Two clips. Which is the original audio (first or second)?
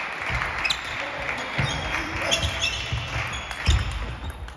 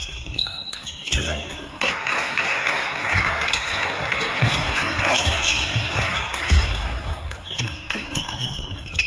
first